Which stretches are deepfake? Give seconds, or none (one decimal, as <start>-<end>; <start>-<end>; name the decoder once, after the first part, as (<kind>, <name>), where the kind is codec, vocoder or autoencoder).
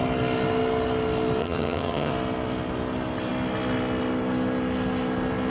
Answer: 1.4-2.1 (vocoder, HiFi-GAN)